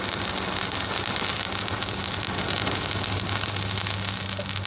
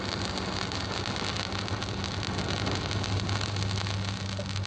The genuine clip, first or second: second